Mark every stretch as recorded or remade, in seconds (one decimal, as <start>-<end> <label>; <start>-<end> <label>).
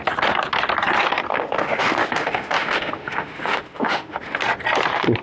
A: 0.0-1.3 recorded; 1.3-4.4 remade; 4.4-5.2 recorded